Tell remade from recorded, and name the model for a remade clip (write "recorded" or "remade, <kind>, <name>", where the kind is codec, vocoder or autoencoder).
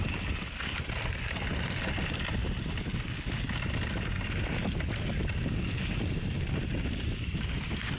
recorded